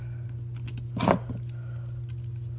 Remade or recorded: recorded